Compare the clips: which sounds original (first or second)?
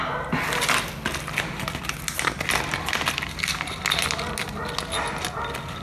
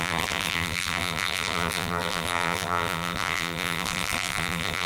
first